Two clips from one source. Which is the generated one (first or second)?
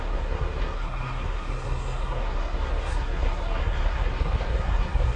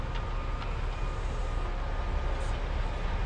first